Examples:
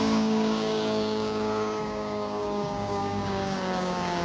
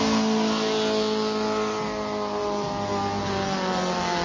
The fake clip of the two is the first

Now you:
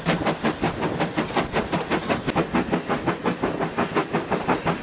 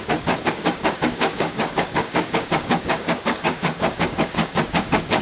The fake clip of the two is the second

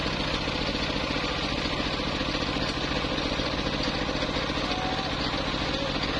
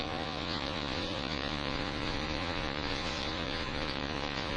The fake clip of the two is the second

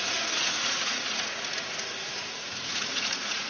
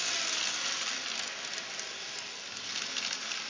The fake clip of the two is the first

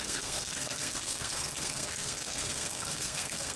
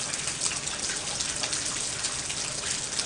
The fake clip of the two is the first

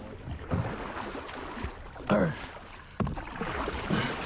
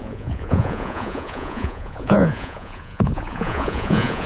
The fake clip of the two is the second